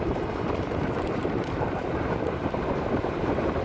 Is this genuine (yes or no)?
no